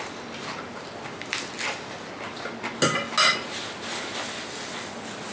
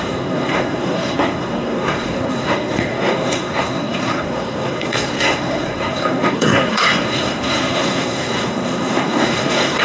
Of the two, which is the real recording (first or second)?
first